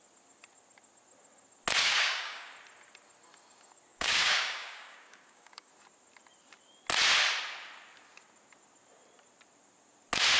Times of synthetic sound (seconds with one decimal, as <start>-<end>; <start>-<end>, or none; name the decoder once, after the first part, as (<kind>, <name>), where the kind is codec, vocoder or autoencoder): 1.8-2.5 (codec, DAC); 3.9-5.7